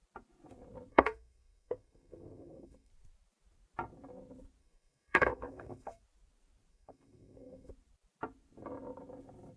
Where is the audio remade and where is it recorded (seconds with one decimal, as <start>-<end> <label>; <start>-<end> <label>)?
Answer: 0.0-0.9 recorded; 0.9-2.9 remade; 2.9-4.6 recorded; 4.6-6.0 remade; 6.0-6.7 recorded; 6.7-7.7 remade; 7.7-9.6 recorded